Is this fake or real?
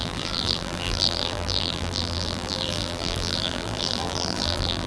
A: fake